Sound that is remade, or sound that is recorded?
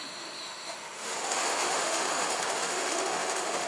remade